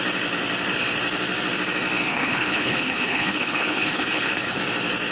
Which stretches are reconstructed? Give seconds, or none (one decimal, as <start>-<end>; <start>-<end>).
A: 2.1-4.6